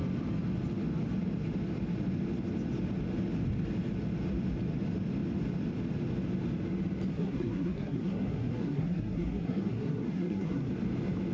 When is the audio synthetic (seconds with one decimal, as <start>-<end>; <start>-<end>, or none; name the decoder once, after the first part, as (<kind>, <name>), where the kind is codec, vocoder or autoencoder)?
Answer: 7.1-10.7 (codec, SNAC)